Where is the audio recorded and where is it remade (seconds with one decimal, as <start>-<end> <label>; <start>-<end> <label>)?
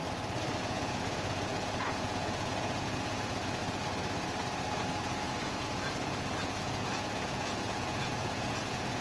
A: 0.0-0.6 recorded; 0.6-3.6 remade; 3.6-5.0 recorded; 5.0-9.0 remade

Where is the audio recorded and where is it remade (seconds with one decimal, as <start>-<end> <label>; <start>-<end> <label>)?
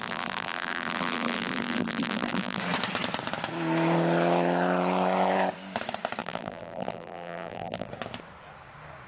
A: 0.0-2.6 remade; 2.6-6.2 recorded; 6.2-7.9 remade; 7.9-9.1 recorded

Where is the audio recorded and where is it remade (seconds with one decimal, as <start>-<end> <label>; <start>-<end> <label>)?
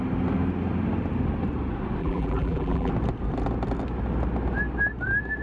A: 0.0-2.0 recorded; 2.0-2.9 remade; 2.9-5.4 recorded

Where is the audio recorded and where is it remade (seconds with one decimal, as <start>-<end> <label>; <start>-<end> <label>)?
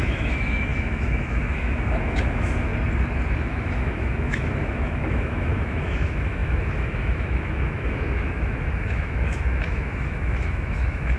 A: 0.0-2.7 remade; 2.7-3.4 recorded; 3.4-11.2 remade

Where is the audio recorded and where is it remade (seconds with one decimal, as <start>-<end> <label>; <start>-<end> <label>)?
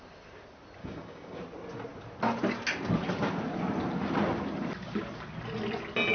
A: 0.0-0.8 recorded; 0.8-1.4 remade; 1.4-6.1 recorded